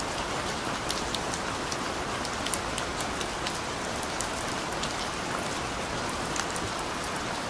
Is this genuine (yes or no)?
yes